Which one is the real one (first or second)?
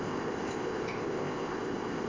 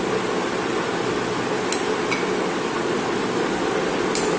second